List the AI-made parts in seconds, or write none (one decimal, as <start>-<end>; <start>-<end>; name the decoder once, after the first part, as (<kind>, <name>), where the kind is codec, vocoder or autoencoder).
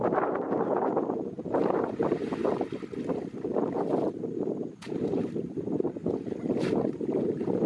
0.0-2.3 (vocoder, BigVGAN v2); 4.1-6.0; 6.6-7.7